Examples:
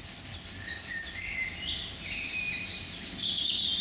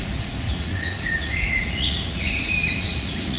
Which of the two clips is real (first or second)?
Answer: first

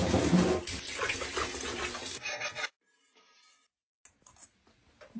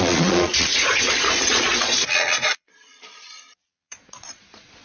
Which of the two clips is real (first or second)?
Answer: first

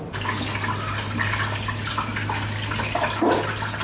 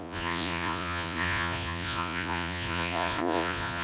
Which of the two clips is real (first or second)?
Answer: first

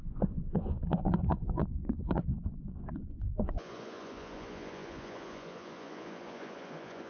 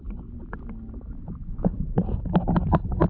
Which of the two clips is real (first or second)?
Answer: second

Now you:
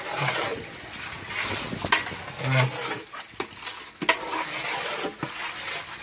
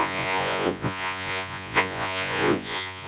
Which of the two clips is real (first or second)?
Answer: first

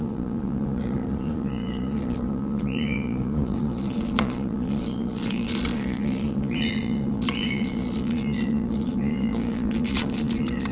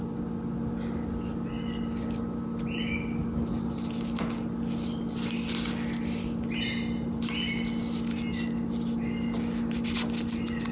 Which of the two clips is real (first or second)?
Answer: second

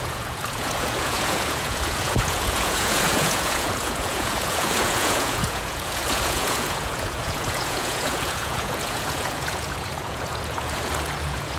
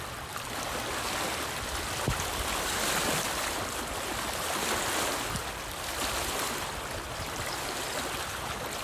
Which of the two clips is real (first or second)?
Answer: second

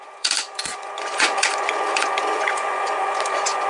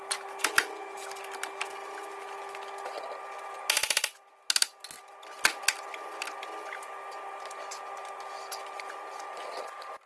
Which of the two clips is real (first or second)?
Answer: second